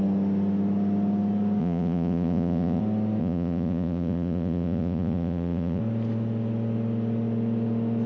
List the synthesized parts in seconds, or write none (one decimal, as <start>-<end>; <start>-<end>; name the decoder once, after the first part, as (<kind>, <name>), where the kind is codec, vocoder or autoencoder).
1.6-2.8 (vocoder, Vocos); 3.2-5.8